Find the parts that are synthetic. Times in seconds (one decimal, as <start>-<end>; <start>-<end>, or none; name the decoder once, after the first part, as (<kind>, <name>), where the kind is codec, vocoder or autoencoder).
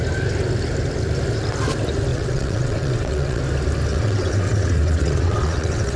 2.1-3.4 (vocoder, WaveNeXt); 3.9-6.0